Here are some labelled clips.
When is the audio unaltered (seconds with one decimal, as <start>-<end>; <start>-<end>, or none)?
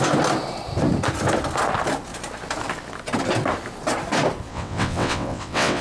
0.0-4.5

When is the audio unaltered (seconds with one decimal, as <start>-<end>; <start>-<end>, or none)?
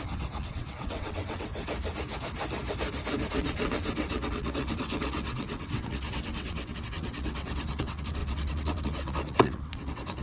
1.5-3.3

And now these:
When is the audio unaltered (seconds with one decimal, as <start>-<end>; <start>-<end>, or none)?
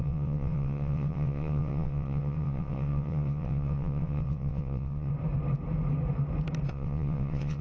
5.1-6.7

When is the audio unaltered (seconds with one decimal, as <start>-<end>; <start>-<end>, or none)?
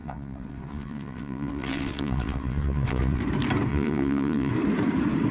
3.2-3.7; 4.5-5.3